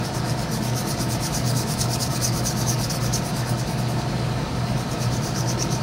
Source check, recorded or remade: remade